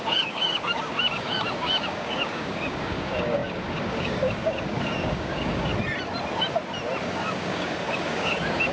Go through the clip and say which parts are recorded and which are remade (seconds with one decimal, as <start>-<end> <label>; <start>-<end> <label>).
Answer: 0.0-5.7 remade; 5.7-7.0 recorded; 7.0-8.7 remade